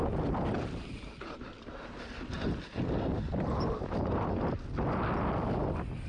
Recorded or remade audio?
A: recorded